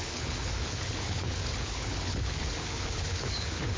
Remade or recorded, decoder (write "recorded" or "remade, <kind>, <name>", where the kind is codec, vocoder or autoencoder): remade, codec, HILCodec